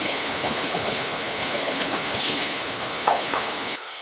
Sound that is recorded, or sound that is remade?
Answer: remade